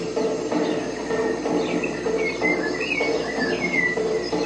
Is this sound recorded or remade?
recorded